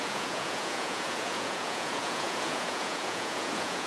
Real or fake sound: fake